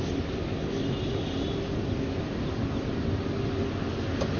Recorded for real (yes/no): yes